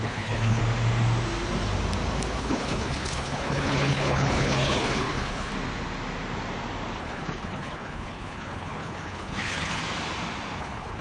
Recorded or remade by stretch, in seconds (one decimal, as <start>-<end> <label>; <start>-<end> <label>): 0.0-0.6 remade; 0.6-2.4 recorded; 2.4-5.5 remade; 5.5-7.0 recorded; 7.0-9.8 remade; 9.8-10.6 recorded; 10.6-11.0 remade